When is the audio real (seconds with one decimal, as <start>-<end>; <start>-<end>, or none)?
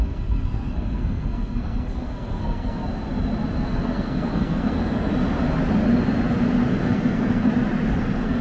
2.8-3.6; 5.1-6.7; 7.5-8.0